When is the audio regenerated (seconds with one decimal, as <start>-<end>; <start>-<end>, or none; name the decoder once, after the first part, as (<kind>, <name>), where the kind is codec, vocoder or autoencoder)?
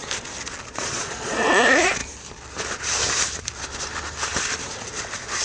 0.7-2.0 (vocoder, Vocos)